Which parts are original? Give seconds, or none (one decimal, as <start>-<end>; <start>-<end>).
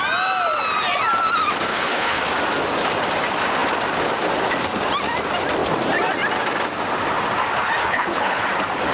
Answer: 0.0-1.7; 2.2-7.8; 8.4-8.9